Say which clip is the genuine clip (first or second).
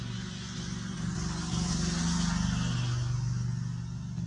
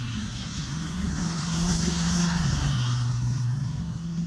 first